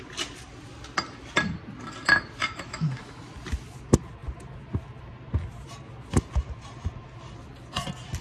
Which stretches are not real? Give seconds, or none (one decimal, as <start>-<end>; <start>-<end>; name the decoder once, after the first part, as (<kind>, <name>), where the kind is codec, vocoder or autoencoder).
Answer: 2.4-3.2 (autoencoder, DAC-VAE)